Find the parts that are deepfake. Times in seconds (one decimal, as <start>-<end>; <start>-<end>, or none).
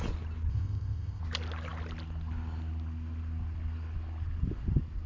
0.5-1.2